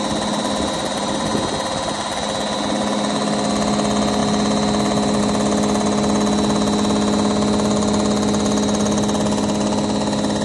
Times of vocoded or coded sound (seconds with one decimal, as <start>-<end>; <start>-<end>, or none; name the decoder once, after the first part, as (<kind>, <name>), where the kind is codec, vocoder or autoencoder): 0.8-1.4 (vocoder, BigVGAN v2)